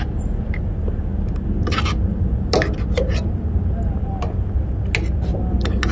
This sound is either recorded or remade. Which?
recorded